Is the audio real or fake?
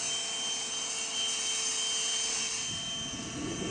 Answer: real